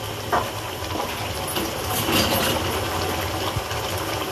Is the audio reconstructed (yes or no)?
no